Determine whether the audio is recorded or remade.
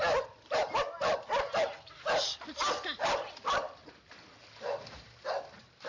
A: recorded